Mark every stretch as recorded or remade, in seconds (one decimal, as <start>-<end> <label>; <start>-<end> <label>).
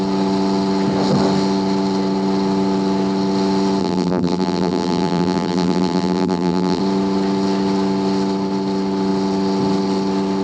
0.0-3.8 recorded; 3.8-6.8 remade; 6.8-10.4 recorded